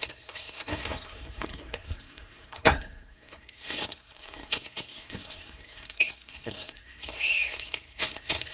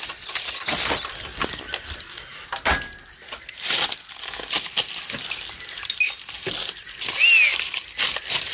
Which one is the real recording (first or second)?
second